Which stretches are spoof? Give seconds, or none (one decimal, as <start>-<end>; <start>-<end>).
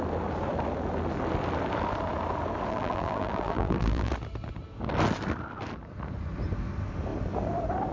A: 2.7-4.1